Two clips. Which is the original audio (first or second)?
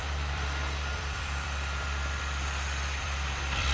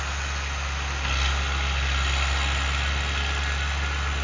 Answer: second